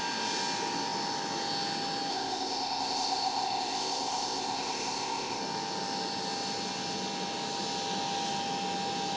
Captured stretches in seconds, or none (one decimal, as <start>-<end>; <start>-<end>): 0.0-2.1; 5.4-9.2